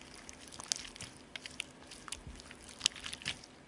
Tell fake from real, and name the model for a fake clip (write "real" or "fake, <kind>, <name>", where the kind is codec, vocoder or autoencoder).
real